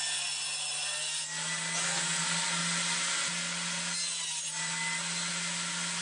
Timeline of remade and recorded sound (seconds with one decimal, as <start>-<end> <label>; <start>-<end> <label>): 0.0-6.0 recorded